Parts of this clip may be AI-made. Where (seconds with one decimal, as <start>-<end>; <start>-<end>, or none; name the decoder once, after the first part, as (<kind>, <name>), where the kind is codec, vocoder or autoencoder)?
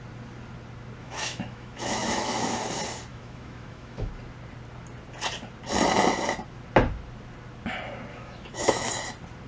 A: 1.0-2.6 (autoencoder, DAC-VAE); 3.1-4.1; 8.1-8.9